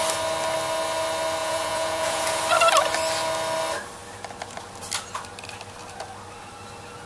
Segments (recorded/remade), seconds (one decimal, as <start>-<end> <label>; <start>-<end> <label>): 0.0-1.4 recorded; 1.4-2.4 remade; 2.4-7.1 recorded